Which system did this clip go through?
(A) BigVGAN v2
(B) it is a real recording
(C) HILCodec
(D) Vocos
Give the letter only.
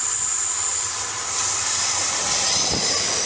B